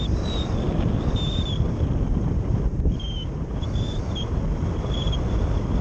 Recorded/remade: recorded